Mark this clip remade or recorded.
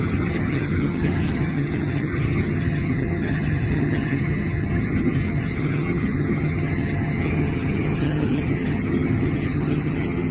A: remade